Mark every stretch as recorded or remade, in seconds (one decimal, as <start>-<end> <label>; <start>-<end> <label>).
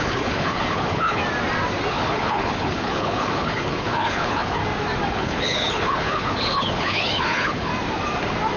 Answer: 0.0-1.2 remade; 1.2-1.9 recorded; 1.9-4.6 remade; 4.6-5.1 recorded; 5.1-7.7 remade; 7.7-8.6 recorded